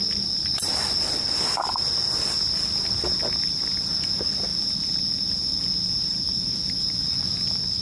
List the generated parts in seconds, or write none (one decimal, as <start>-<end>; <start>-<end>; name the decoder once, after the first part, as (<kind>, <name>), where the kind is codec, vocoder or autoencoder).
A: none